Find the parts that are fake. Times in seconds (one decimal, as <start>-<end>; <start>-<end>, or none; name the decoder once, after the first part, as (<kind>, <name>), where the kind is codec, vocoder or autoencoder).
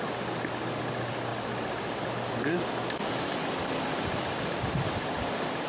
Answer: none